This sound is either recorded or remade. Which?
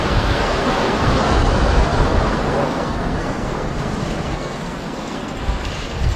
remade